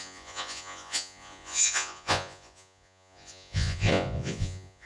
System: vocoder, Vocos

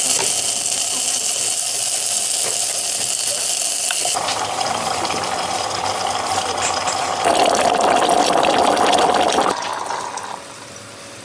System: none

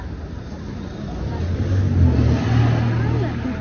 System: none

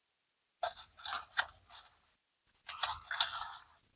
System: none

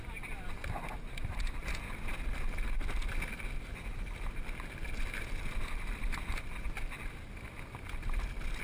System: none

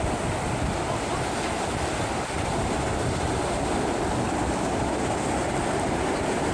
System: none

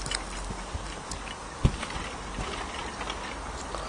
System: none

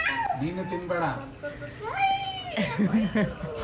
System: none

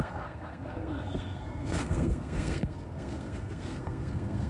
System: codec, SNAC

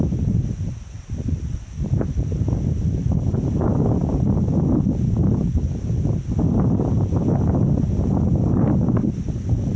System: none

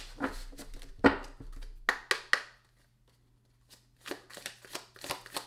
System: none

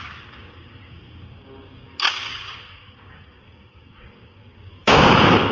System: codec, DAC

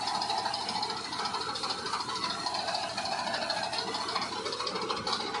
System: none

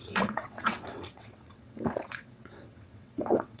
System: vocoder, WaveNeXt